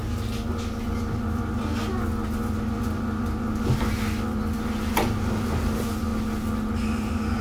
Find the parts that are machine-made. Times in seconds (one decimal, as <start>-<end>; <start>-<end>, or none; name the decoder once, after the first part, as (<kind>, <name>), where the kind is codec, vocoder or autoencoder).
none